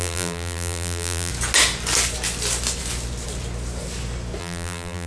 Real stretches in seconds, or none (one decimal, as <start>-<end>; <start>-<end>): 1.3-4.4